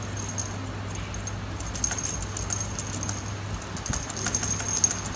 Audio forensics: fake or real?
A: real